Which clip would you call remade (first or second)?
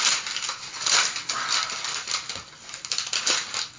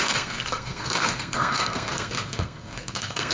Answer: second